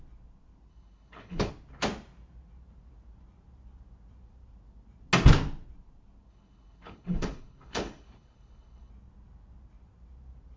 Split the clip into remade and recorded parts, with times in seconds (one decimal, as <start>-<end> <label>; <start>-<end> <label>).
0.0-0.7 recorded; 0.7-1.5 remade; 1.5-6.3 recorded; 6.3-8.9 remade; 8.9-10.6 recorded